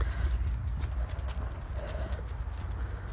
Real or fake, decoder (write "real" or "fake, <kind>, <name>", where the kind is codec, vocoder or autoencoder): real